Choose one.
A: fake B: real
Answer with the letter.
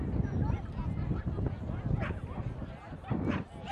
B